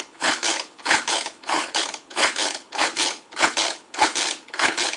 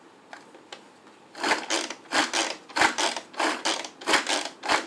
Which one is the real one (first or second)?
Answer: second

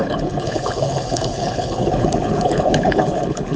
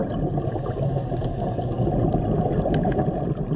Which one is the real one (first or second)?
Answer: second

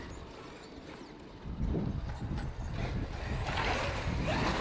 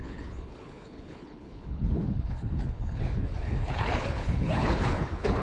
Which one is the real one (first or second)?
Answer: first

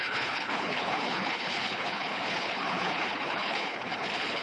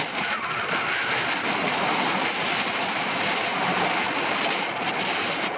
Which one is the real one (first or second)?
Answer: second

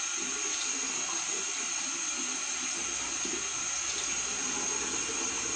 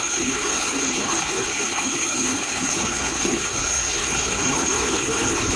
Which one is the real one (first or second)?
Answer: first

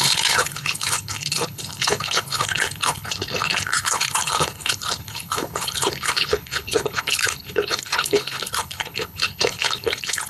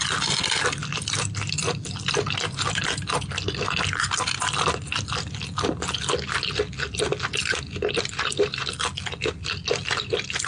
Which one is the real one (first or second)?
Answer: second